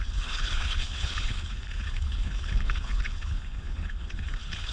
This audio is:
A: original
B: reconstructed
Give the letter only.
B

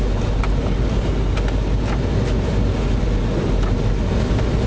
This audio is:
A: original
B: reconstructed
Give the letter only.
A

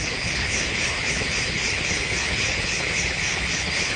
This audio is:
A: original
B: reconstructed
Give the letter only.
B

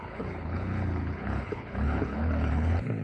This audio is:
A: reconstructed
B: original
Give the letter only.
A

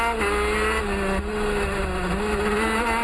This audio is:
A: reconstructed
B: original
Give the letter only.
B